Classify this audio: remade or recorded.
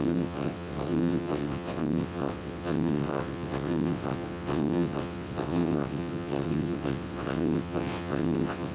remade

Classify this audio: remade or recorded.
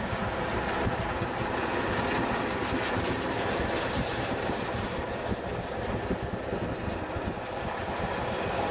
recorded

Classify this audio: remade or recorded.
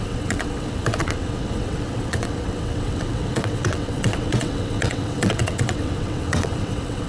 remade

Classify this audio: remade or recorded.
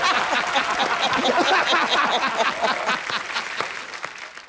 recorded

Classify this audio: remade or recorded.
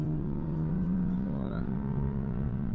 remade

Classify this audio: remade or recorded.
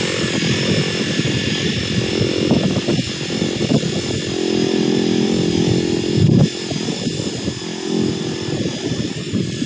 recorded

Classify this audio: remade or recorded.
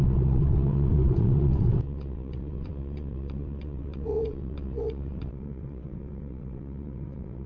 remade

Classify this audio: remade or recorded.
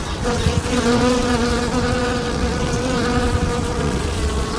remade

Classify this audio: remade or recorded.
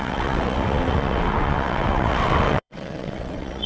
remade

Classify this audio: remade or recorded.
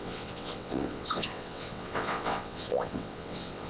remade